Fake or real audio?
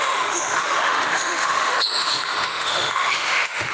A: fake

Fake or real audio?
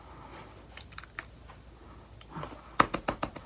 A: real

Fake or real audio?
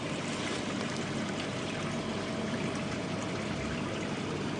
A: real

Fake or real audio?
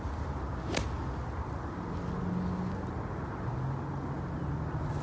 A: real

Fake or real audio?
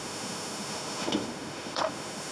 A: fake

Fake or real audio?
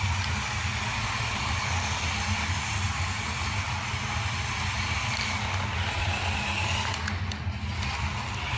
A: real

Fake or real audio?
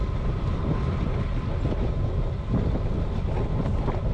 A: real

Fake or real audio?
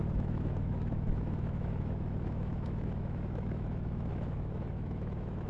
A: fake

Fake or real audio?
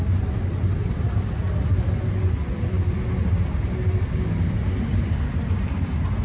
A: real